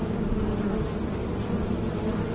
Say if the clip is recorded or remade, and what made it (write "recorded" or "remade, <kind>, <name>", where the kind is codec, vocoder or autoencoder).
recorded